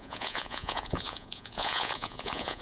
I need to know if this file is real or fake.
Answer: fake